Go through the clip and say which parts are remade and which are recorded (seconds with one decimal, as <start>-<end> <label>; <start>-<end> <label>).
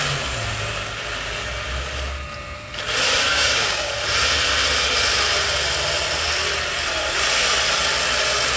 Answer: 0.0-3.3 recorded; 3.3-3.9 remade; 3.9-8.6 recorded